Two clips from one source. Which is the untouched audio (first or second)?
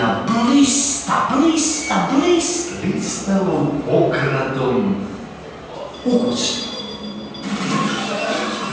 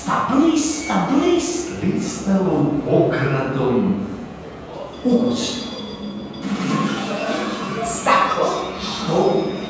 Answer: first